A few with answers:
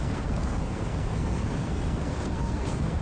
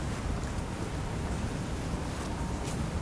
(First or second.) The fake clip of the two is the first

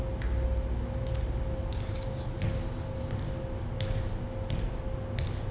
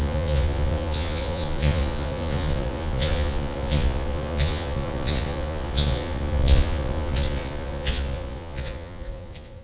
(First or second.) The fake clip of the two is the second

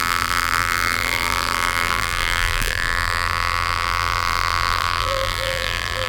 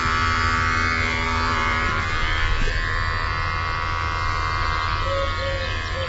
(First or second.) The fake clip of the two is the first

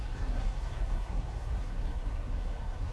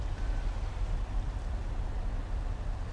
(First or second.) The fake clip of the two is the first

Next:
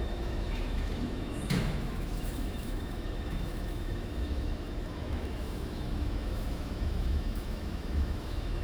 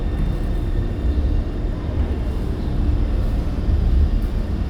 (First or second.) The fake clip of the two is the first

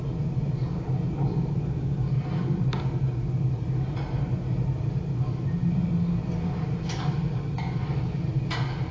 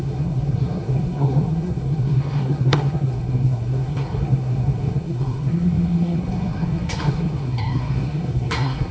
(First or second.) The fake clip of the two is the second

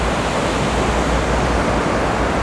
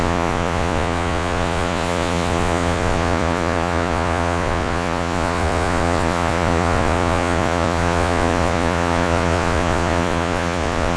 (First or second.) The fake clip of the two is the second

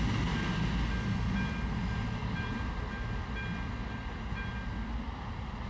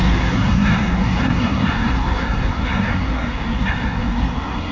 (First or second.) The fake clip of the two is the second